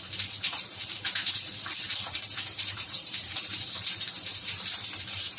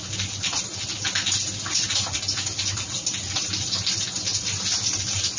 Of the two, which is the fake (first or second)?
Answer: first